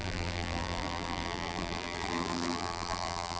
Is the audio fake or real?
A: fake